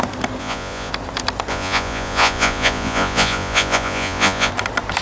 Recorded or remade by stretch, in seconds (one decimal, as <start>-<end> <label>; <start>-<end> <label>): 0.0-0.4 recorded; 0.4-0.9 remade; 0.9-1.5 recorded; 1.5-4.5 remade; 4.5-5.0 recorded